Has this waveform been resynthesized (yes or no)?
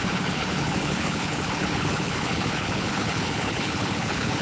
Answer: yes